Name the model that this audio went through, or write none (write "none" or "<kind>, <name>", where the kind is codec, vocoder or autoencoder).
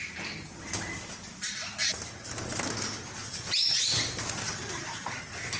none